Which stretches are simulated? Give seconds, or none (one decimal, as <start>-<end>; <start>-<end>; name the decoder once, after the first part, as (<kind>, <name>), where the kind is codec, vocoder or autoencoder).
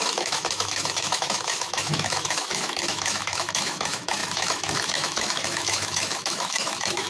0.0-7.1 (autoencoder, DAC-VAE)